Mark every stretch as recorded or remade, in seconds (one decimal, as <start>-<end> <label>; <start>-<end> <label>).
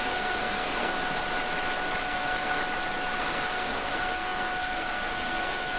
0.0-0.9 remade; 0.9-2.0 recorded; 2.0-2.6 remade; 2.6-3.2 recorded; 3.2-5.8 remade